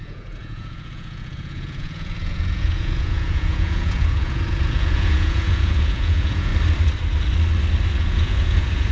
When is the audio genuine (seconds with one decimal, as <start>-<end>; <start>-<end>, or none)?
6.5-7.9